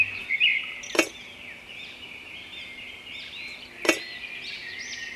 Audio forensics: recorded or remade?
recorded